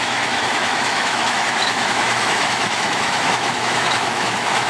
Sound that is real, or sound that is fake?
fake